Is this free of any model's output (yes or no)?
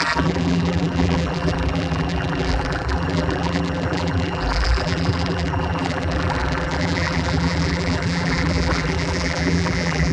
no